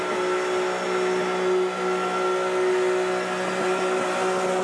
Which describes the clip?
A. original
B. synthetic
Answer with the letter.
A